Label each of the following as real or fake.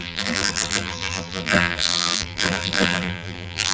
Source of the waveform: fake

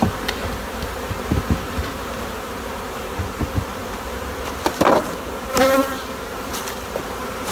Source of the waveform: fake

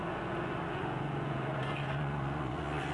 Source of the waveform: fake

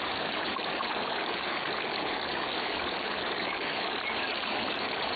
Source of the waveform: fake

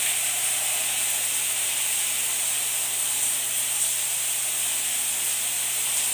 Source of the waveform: real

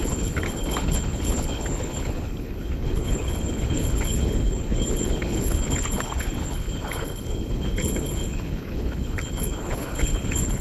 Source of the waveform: fake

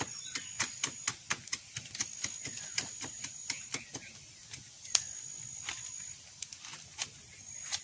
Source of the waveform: real